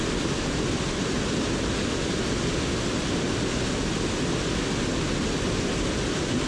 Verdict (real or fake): real